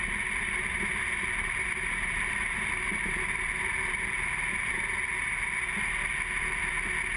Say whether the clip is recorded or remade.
recorded